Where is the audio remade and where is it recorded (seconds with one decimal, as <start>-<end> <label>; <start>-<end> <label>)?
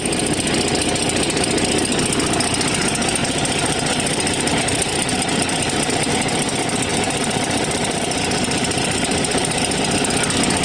0.0-3.2 recorded; 3.2-6.1 remade; 6.1-6.9 recorded; 6.9-10.1 remade; 10.1-10.6 recorded